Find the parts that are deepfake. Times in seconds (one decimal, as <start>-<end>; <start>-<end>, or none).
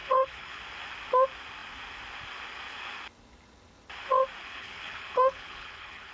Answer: 0.0-0.6; 4.4-6.1